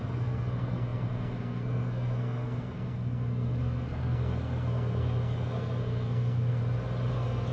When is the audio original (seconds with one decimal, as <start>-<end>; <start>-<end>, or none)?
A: 6.6-7.1

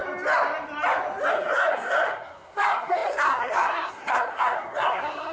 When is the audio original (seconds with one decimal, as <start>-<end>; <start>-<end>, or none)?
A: 0.0-1.3